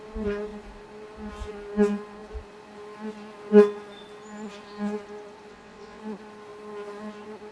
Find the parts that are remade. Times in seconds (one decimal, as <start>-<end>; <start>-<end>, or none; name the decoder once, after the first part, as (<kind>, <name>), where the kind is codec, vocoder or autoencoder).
5.5-6.0 (vocoder, WaveNeXt)